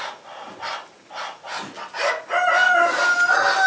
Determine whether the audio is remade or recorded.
recorded